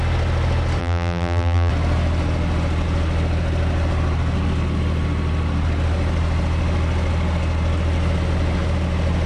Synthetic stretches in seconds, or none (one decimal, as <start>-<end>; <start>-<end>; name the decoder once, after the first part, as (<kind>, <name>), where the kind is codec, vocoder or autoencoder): 0.8-1.7 (vocoder, BigVGAN v2)